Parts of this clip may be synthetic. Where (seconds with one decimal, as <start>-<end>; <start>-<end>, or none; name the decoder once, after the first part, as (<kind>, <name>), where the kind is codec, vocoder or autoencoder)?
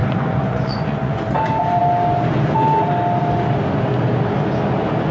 0.0-1.2 (vocoder, Vocos)